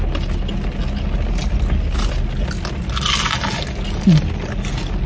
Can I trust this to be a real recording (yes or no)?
yes